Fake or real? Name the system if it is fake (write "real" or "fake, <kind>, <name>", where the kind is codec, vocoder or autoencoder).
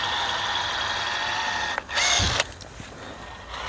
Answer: real